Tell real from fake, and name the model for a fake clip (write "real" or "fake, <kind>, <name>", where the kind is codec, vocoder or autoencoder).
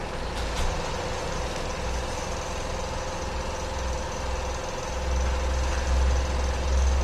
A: real